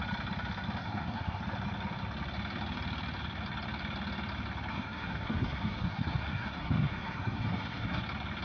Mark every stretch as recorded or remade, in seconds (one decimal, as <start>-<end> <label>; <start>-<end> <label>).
0.0-0.8 recorded; 0.8-1.4 remade; 1.4-4.7 recorded; 4.7-8.0 remade; 8.0-8.4 recorded